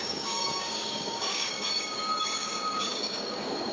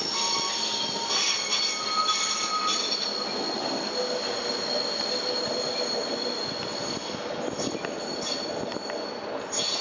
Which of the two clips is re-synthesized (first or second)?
first